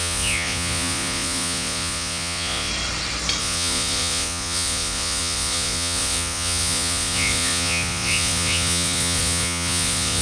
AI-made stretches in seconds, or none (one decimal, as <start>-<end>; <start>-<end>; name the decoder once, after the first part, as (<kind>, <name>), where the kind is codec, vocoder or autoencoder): 0.0-2.7 (vocoder, Vocos); 3.4-10.2